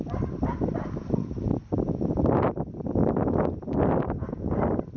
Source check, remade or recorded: recorded